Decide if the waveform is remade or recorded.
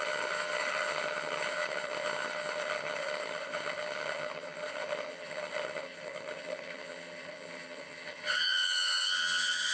remade